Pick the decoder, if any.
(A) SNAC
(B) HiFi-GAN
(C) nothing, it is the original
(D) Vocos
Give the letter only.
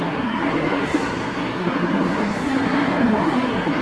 A